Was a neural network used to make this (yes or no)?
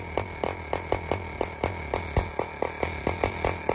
no